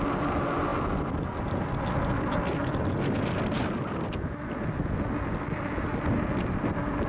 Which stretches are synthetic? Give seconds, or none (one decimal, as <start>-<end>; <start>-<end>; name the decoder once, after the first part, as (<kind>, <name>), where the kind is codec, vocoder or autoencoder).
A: none